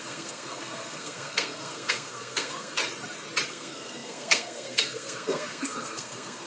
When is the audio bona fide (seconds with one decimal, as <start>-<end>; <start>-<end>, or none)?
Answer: 2.8-3.5